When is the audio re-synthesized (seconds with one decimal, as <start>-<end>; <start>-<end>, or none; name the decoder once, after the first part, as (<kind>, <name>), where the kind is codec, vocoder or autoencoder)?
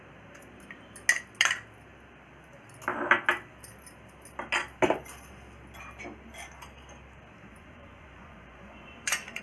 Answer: 7.5-9.4 (vocoder, Vocos)